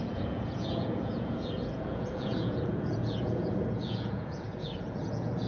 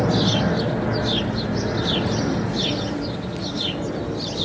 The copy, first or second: first